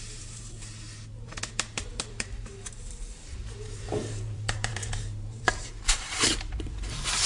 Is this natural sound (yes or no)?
no